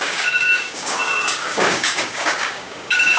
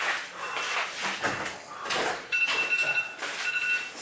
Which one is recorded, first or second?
second